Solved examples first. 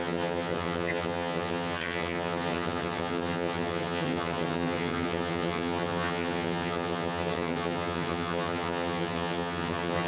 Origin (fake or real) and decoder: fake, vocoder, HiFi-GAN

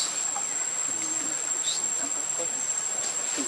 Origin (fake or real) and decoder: real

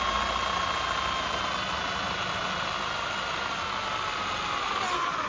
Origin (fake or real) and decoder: real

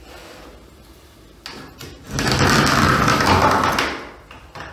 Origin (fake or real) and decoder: real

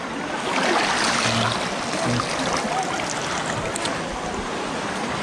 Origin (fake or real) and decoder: real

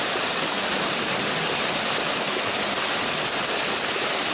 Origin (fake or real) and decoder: real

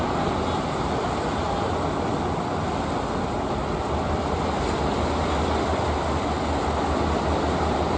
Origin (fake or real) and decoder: real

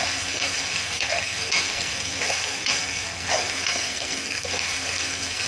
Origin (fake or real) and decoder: fake, codec, SNAC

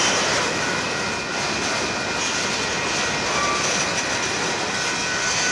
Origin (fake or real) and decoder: real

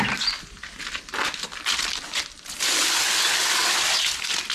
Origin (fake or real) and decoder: real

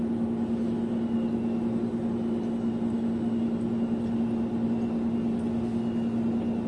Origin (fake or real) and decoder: real